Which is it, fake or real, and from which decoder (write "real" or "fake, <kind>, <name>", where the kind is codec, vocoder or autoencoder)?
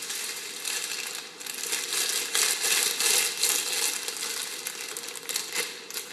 real